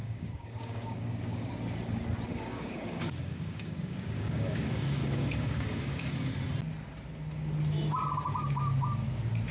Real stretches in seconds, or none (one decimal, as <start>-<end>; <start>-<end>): 1.5-2.3; 6.3-9.5